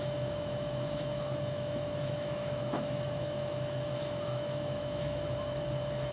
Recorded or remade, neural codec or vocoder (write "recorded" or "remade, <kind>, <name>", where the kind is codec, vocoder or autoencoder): remade, autoencoder, DAC-VAE